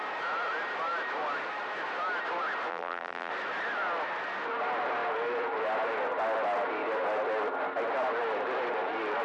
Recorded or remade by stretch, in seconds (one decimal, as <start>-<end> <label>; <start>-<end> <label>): 0.0-2.7 recorded; 2.7-3.3 remade; 3.3-9.2 recorded